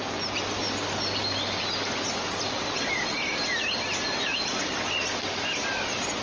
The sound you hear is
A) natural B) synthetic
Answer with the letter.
A